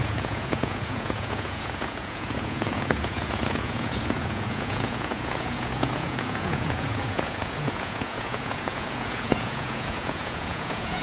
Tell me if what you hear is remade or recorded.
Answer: remade